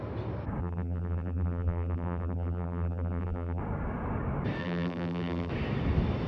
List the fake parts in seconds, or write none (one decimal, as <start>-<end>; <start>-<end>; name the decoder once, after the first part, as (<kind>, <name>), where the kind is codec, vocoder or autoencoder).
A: 0.6-3.6 (vocoder, BigVGAN v2); 4.6-5.5